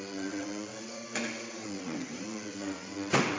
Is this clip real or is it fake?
fake